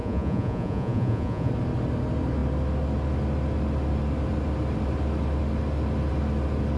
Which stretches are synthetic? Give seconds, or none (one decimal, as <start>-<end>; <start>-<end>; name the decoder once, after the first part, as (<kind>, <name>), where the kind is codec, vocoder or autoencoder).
0.0-1.5 (vocoder, Vocos)